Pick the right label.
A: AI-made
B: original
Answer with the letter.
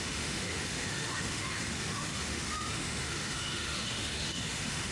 A